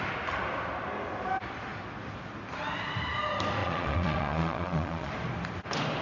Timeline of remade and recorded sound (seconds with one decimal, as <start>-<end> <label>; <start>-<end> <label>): 0.0-3.6 recorded; 3.6-5.1 remade; 5.1-6.0 recorded